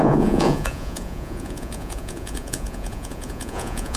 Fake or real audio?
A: fake